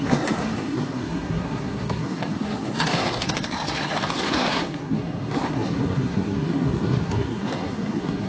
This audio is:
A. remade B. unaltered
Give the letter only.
A